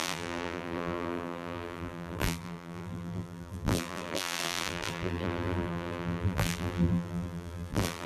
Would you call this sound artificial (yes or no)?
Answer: yes